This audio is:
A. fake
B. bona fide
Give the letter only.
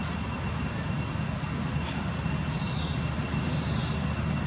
B